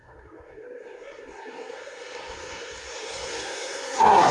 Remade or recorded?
remade